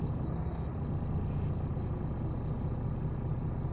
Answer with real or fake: real